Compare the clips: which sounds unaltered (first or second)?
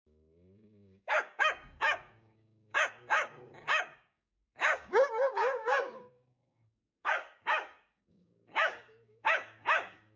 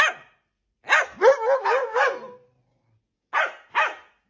second